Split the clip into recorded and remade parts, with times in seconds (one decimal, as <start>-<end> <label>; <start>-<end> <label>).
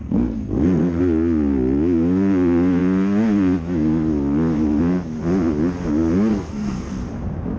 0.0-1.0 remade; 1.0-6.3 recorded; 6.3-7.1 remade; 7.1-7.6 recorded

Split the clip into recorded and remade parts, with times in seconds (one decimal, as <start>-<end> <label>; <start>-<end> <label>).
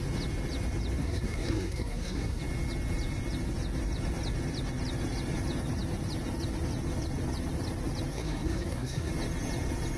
0.0-1.0 recorded; 1.0-2.4 remade; 2.4-8.1 recorded; 8.1-9.1 remade; 9.1-10.0 recorded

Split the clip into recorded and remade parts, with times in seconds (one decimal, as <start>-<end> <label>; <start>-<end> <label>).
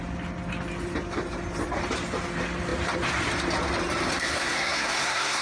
0.0-4.1 recorded; 4.1-5.4 remade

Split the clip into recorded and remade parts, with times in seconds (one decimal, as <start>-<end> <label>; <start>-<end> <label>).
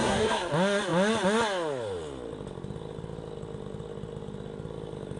0.0-0.5 remade; 0.5-5.2 recorded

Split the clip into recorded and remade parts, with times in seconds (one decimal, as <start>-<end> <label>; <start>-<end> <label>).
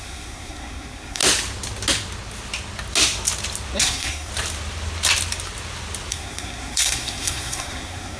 0.0-1.2 remade; 1.2-3.8 recorded; 3.8-4.3 remade; 4.3-6.1 recorded; 6.1-8.2 remade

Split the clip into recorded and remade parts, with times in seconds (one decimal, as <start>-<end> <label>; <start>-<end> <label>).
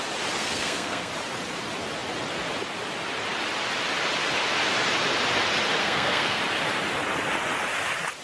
0.0-0.4 recorded; 0.4-1.1 remade; 1.1-5.8 recorded; 5.8-6.4 remade; 6.4-8.2 recorded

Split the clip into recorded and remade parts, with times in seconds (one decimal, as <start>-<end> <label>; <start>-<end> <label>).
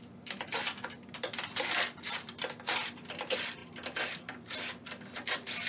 0.0-5.7 recorded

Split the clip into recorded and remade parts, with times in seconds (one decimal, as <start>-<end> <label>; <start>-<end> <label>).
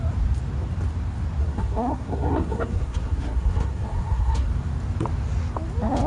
0.0-1.4 recorded; 1.4-4.5 remade; 4.5-6.1 recorded